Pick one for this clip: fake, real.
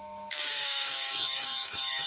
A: fake